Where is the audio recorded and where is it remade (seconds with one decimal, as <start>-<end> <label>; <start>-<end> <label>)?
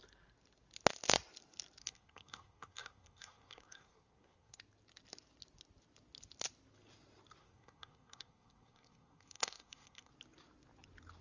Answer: 0.0-1.8 recorded; 1.8-4.6 remade; 4.6-7.4 recorded; 7.4-10.1 remade; 10.1-11.2 recorded